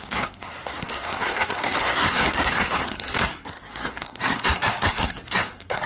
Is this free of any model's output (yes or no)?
no